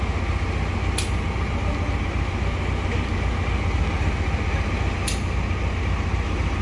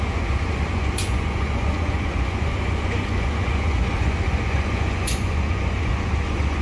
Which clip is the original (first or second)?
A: first